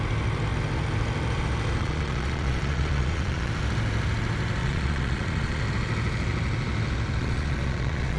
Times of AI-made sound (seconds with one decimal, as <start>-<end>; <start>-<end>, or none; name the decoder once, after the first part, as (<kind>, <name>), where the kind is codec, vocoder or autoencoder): 1.8-3.5 (vocoder, Vocos); 4.6-5.6; 7.2-8.2